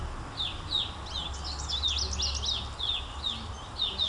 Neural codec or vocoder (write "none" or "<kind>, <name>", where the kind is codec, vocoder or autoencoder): none